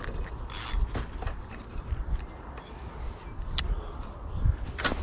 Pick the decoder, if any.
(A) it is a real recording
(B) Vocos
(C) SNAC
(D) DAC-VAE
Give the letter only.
A